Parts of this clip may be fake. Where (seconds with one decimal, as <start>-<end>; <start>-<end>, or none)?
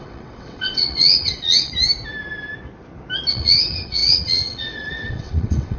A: 0.0-1.7; 3.3-5.8